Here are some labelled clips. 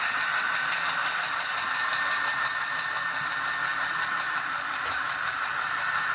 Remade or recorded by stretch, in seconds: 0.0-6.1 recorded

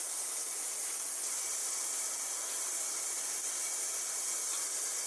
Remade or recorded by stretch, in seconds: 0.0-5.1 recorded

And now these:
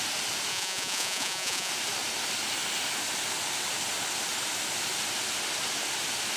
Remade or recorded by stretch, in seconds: 0.0-0.5 recorded; 0.5-1.7 remade; 1.7-6.4 recorded

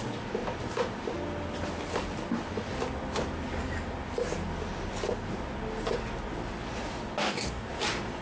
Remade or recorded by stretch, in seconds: 0.0-7.2 recorded; 7.2-7.7 remade; 7.7-8.2 recorded

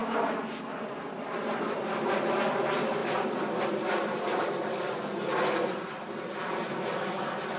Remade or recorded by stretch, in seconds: 0.0-7.6 recorded